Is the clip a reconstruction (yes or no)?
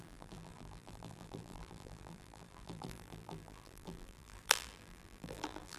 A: yes